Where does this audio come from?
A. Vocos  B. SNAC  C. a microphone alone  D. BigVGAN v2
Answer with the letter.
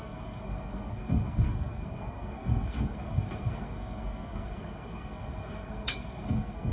B